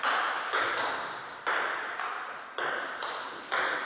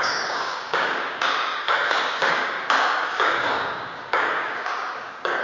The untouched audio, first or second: first